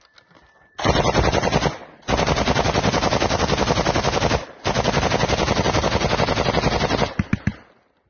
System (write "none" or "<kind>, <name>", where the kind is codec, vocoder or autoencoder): none